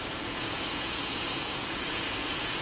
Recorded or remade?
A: remade